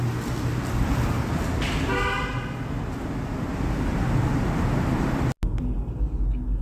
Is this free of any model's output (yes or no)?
yes